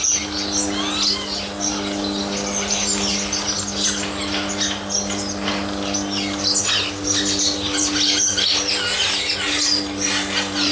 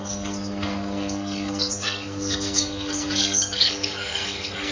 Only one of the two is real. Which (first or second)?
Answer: first